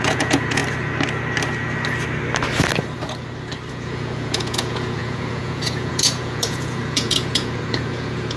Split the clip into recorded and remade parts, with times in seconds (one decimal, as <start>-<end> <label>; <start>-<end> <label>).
0.0-0.6 remade; 0.6-3.7 recorded; 3.7-8.4 remade